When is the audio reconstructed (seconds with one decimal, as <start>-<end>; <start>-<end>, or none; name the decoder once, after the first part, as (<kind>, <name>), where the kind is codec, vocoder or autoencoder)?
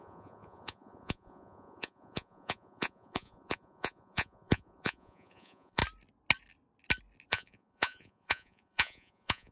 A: 0.0-5.8 (vocoder, Vocos); 7.3-9.5